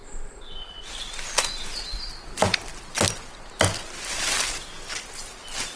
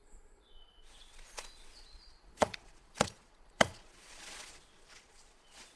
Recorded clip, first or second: first